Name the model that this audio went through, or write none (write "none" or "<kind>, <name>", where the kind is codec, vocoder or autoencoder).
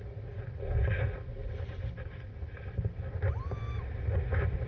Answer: none